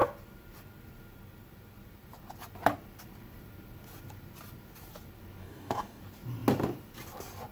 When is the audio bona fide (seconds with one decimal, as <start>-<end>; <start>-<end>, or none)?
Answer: 0.0-5.4; 6.0-7.5